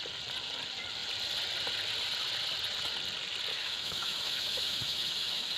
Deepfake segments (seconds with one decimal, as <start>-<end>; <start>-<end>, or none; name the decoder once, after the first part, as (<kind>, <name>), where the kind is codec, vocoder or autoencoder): 3.5-5.6 (autoencoder, DAC-VAE)